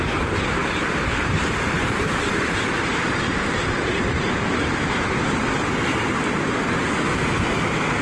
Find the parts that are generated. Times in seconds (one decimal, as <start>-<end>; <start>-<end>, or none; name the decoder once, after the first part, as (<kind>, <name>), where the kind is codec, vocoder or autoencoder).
0.0-0.6 (vocoder, BigVGAN v2); 1.2-5.4